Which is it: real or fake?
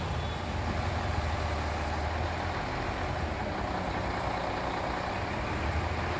real